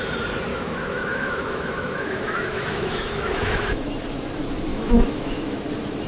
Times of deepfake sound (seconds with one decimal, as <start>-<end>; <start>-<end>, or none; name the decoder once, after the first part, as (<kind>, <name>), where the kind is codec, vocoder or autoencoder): 0.5-3.9 (autoencoder, DAC-VAE); 4.7-5.6